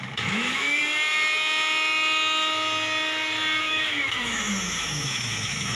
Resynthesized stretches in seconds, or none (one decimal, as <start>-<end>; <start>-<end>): 0.0-0.8; 3.6-5.7

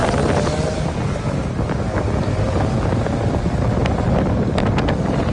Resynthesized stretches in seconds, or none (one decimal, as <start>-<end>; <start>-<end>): none

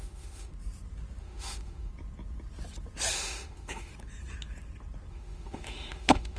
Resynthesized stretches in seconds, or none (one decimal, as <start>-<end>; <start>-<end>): 0.0-0.5; 1.2-1.9; 3.1-3.9; 5.1-6.4